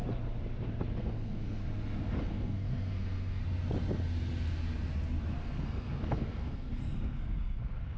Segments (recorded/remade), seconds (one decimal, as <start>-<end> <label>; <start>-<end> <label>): 0.0-1.0 recorded; 1.0-1.6 remade; 1.6-2.2 recorded; 2.2-3.4 remade; 3.4-5.4 recorded; 5.4-8.0 remade